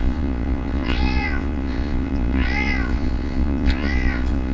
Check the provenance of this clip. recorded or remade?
remade